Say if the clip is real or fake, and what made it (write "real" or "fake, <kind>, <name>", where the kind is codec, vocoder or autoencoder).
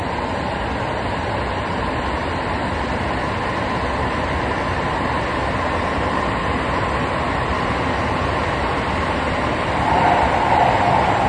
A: real